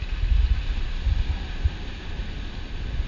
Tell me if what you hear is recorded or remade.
recorded